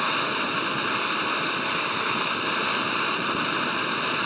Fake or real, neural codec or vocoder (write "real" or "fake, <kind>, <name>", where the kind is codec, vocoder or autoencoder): real